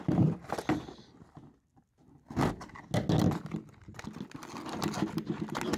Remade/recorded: recorded